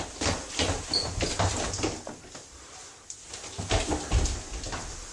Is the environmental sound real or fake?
real